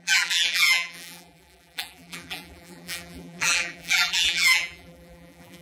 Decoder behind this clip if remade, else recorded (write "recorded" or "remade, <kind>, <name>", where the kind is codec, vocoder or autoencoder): remade, vocoder, BigVGAN v2